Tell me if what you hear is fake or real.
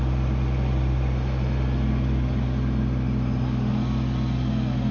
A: real